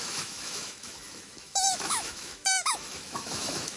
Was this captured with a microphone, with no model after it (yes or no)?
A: no